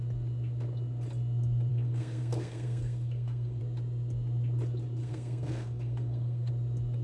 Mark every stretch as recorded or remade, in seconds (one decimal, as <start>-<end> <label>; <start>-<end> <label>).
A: 0.0-1.7 recorded; 1.7-3.6 remade; 3.6-5.0 recorded; 5.0-6.5 remade; 6.5-7.0 recorded